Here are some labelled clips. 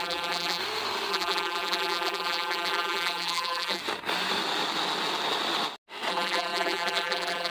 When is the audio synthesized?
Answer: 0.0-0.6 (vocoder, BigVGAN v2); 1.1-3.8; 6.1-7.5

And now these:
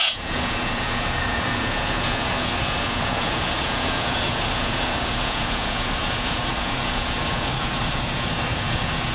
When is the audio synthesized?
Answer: 0.0-9.1 (vocoder, Vocos)

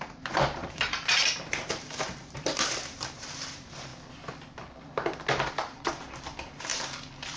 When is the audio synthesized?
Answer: 0.0-3.9 (vocoder, BigVGAN v2); 5.5-6.7